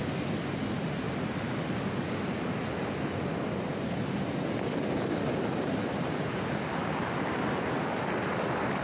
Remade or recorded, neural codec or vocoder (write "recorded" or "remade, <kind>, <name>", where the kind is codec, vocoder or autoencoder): recorded